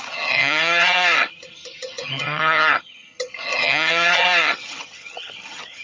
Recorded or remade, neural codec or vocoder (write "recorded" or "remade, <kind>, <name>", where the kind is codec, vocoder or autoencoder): remade, vocoder, HiFi-GAN